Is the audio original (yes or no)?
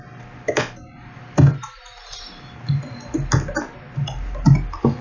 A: yes